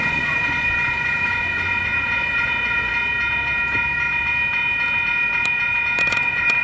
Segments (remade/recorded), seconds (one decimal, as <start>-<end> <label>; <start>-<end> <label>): 0.0-2.9 remade; 2.9-6.0 recorded; 6.0-6.6 remade